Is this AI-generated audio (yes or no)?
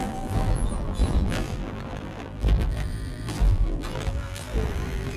yes